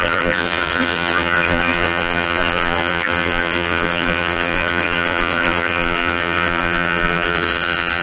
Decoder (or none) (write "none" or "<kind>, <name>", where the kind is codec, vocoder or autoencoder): vocoder, BigVGAN v2